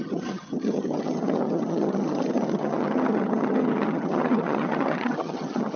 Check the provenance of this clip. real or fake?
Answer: fake